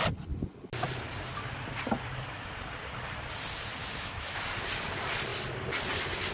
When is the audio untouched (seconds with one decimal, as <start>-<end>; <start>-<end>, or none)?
0.0-3.8; 4.4-6.3